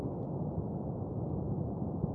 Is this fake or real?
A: real